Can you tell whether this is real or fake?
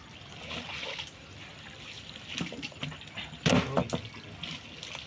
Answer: real